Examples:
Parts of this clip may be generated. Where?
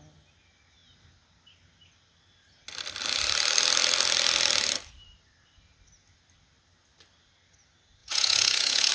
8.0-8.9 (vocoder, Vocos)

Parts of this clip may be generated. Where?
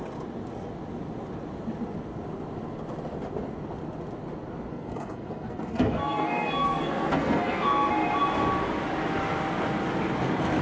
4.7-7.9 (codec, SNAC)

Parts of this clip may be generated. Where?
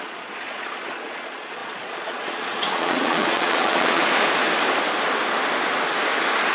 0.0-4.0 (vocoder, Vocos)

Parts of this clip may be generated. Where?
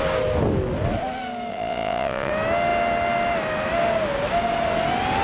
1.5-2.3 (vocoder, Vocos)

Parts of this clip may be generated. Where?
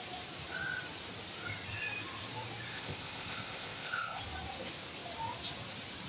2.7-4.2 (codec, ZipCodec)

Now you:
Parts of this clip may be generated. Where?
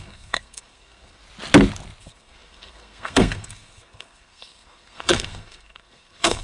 0.0-1.2 (codec, SNAC); 2.0-6.4